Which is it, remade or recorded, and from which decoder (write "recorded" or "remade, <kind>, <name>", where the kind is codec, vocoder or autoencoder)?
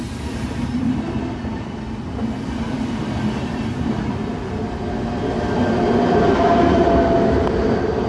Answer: recorded